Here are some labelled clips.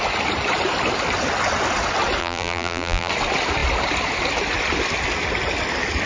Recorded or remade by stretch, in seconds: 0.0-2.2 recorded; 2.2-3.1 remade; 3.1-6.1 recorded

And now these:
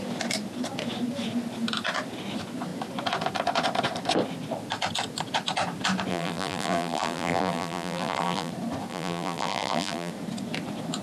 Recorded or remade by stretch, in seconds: 0.0-6.1 recorded; 6.1-8.5 remade; 8.5-8.9 recorded; 8.9-10.1 remade; 10.1-11.0 recorded

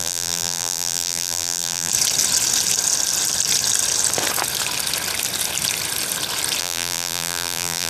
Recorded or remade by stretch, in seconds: 0.0-1.9 remade; 1.9-6.6 recorded; 6.6-7.9 remade

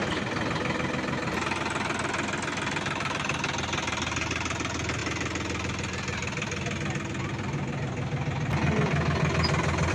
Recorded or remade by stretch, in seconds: 0.0-9.9 recorded

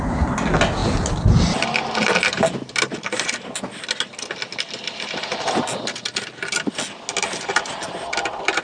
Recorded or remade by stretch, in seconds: 0.0-8.6 recorded

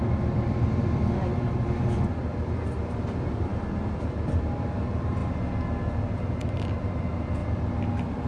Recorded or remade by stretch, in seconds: 0.0-5.2 remade; 5.2-5.9 recorded; 5.9-7.4 remade; 7.4-7.9 recorded; 7.9-8.3 remade

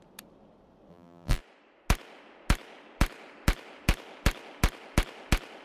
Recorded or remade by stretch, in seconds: 0.0-0.9 recorded; 0.9-1.4 remade; 1.4-5.6 recorded